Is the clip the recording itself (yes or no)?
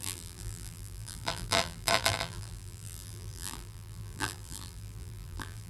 no